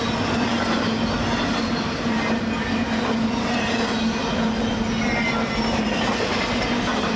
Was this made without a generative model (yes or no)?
yes